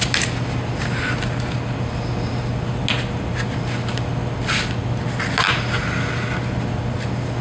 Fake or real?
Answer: real